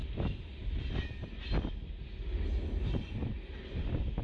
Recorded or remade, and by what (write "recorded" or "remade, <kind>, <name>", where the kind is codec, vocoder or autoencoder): recorded